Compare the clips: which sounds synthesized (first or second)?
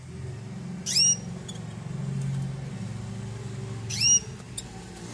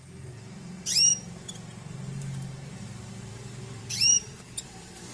second